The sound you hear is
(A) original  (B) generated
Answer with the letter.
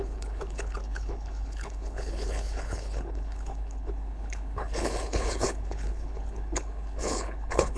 B